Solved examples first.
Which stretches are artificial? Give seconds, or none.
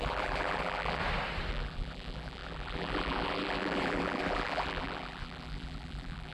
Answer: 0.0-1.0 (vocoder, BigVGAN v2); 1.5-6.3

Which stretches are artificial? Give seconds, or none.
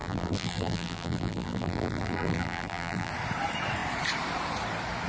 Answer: 0.0-3.1 (vocoder, BigVGAN v2)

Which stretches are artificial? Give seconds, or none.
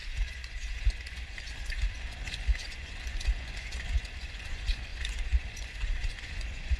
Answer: 0.0-6.8 (vocoder, Vocos)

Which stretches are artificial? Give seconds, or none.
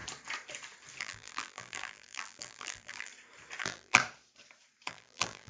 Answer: 1.0-3.1 (vocoder, BigVGAN v2); 3.6-4.0; 4.9-5.5